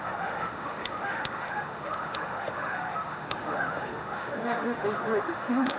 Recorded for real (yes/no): no